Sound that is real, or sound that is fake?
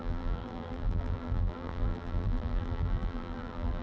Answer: fake